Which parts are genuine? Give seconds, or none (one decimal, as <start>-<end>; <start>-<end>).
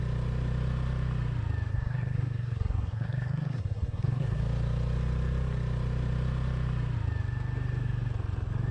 0.0-1.7; 4.4-8.7